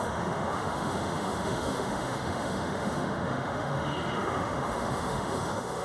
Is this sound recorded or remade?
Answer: remade